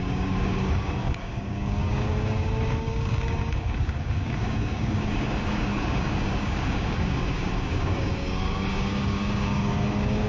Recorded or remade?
remade